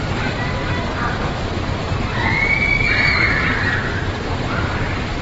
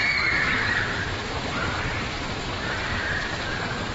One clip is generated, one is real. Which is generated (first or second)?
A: second